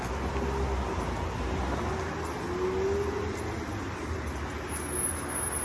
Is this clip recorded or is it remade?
recorded